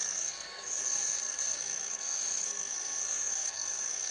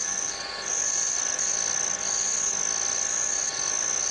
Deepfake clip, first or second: first